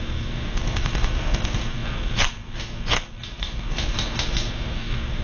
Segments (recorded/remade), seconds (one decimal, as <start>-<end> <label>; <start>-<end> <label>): 0.0-5.2 remade